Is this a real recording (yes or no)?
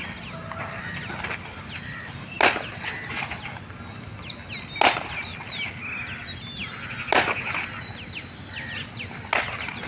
yes